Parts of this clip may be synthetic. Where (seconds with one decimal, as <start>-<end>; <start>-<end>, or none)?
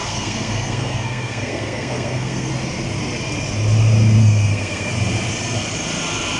0.0-2.5; 4.2-4.9